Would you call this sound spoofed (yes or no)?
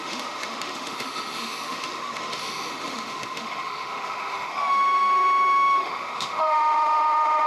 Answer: yes